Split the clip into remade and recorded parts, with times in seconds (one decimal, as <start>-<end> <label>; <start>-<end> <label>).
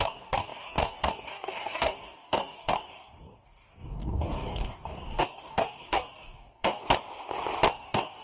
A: 0.0-6.8 remade; 6.8-7.7 recorded; 7.7-8.2 remade